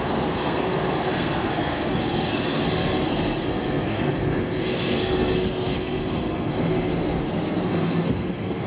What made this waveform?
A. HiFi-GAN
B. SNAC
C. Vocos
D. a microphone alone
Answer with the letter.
B